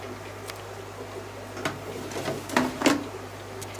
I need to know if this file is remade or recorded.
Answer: recorded